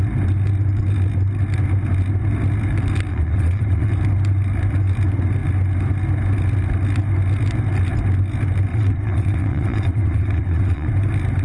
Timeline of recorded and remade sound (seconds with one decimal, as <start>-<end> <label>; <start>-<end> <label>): 0.0-3.1 recorded; 3.1-3.9 remade; 3.9-8.7 recorded; 8.7-10.9 remade; 10.9-11.4 recorded